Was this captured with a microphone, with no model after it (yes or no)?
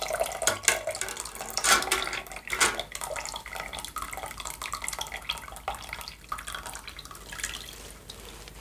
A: yes